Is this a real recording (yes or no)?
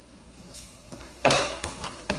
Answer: no